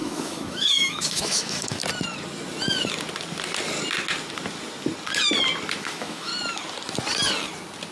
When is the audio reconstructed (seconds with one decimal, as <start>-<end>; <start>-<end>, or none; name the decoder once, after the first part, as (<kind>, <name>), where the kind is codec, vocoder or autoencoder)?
0.0-1.8 (autoencoder, DAC-VAE); 5.8-6.3